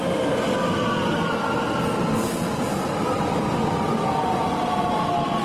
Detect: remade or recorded recorded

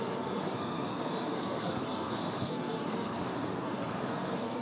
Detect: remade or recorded remade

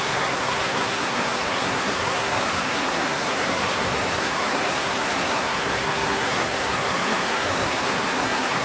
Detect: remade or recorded remade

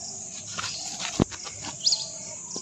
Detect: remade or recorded recorded